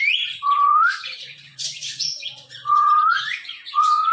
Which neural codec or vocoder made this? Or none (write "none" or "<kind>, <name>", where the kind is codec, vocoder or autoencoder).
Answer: vocoder, Vocos